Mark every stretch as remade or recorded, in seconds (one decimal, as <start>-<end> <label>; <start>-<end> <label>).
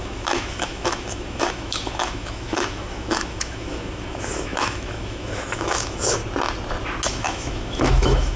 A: 0.0-6.2 remade; 6.2-7.1 recorded; 7.1-8.4 remade